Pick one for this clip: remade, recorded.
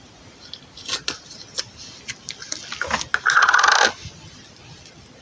recorded